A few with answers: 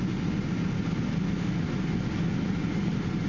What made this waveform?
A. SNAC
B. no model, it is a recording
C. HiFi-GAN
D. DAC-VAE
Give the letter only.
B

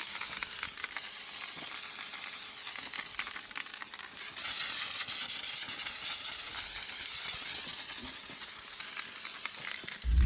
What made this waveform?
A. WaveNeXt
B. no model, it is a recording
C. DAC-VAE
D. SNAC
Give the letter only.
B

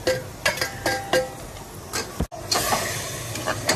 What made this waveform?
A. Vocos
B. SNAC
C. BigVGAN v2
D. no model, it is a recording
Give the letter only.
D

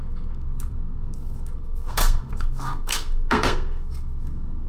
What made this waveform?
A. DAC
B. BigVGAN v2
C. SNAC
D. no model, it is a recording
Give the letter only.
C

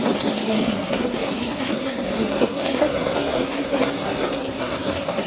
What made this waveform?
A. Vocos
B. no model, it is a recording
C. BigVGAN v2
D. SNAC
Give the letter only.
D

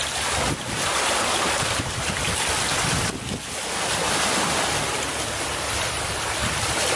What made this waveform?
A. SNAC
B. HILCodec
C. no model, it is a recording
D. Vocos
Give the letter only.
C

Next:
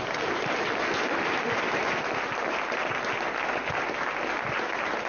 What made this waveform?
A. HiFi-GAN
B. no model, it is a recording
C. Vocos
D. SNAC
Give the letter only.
B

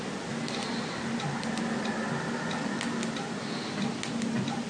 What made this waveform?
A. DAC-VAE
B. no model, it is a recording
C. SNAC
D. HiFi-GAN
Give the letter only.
B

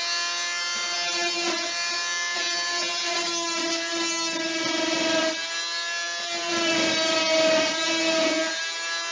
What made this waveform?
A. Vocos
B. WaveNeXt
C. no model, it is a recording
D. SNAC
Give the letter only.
C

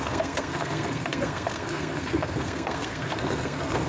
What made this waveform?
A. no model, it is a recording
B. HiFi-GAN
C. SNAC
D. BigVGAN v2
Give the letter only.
C